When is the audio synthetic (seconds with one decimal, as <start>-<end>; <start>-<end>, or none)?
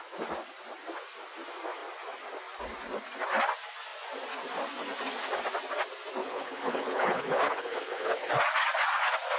6.2-8.3